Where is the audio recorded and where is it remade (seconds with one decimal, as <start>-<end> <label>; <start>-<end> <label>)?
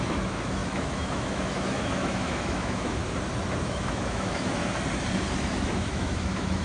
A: 0.0-3.0 remade; 3.0-3.6 recorded; 3.6-4.6 remade; 4.6-5.3 recorded; 5.3-6.6 remade